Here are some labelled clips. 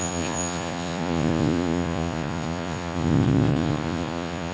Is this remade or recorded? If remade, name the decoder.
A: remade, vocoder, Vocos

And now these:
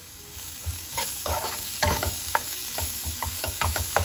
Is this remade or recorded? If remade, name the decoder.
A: remade, codec, DAC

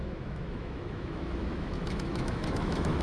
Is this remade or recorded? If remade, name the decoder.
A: remade, autoencoder, DAC-VAE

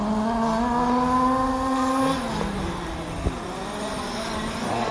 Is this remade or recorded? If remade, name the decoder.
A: recorded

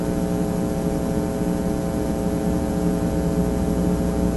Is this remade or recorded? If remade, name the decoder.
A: recorded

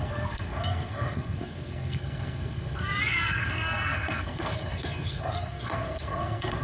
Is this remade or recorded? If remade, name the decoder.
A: remade, codec, SNAC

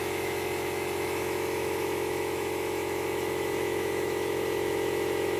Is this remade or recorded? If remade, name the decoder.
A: remade, autoencoder, DAC-VAE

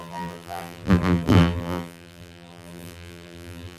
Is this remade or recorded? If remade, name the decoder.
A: remade, vocoder, BigVGAN v2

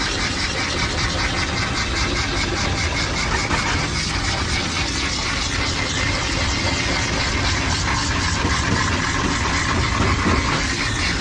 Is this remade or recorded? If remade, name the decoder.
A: recorded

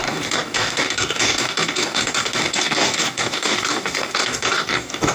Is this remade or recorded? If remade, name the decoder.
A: remade, codec, DAC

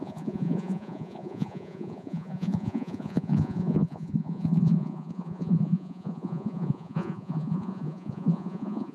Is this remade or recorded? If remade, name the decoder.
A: remade, vocoder, Vocos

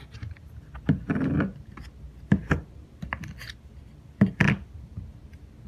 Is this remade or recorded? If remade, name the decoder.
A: recorded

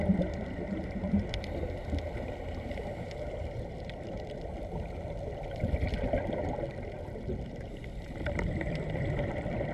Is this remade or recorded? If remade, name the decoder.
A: remade, vocoder, BigVGAN v2